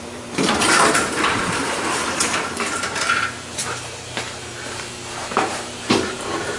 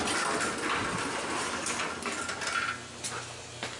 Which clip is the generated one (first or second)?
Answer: first